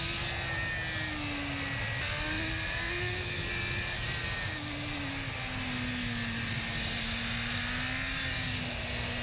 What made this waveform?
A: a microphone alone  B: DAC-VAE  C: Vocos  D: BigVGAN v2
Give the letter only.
A